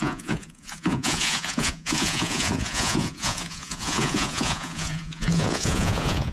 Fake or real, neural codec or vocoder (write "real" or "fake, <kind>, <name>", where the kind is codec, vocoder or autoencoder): fake, vocoder, Vocos